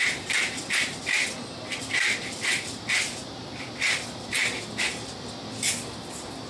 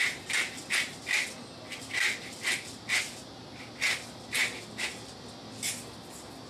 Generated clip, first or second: first